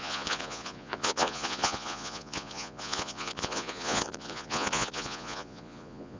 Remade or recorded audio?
remade